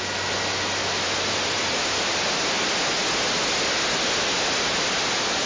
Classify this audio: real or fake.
real